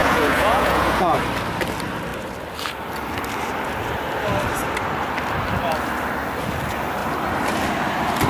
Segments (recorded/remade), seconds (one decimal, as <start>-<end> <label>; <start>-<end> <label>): 0.0-1.2 remade; 1.2-8.3 recorded